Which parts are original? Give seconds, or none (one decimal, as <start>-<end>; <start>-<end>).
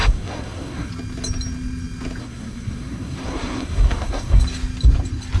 0.9-2.2; 4.4-5.4